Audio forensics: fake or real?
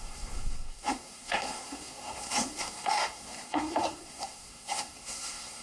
fake